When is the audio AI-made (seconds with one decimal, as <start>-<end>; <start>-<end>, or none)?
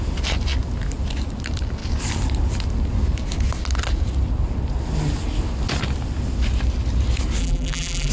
7.4-8.1